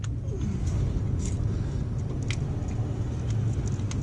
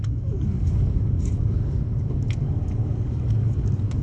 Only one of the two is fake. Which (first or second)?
second